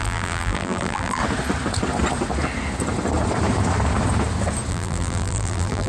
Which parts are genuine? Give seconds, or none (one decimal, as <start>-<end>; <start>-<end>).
1.2-4.7

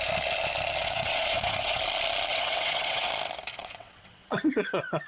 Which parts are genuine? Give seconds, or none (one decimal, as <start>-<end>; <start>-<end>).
0.0-0.8; 1.8-2.3; 3.1-3.6

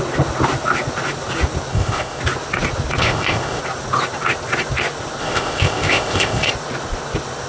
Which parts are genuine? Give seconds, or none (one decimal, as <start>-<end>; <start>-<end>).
0.0-1.7; 2.2-3.0; 3.6-5.2; 6.5-7.5

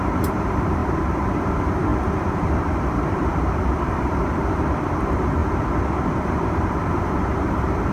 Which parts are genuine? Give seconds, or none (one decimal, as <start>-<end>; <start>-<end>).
5.4-6.2

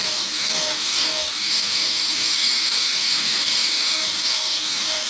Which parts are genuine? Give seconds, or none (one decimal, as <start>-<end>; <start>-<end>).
none

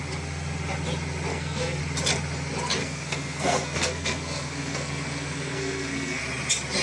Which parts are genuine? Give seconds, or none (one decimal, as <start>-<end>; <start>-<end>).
0.0-1.3; 1.8-2.8; 6.2-6.8

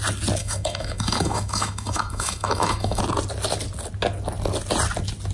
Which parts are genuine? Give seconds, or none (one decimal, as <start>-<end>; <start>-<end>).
0.0-0.4; 3.0-5.3

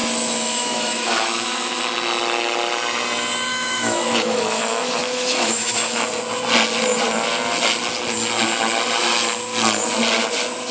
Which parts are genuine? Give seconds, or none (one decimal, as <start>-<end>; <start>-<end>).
1.8-3.5; 6.0-10.7